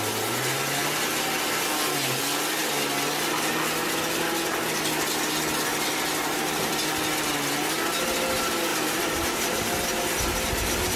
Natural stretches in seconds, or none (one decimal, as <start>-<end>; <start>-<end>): 0.0-5.7; 6.7-8.7; 9.6-11.0